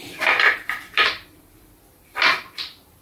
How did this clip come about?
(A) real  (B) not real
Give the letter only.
B